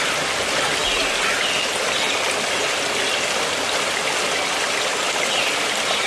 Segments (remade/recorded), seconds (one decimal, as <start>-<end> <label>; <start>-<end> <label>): 0.0-6.1 recorded